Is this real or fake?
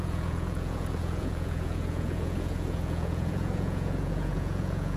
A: fake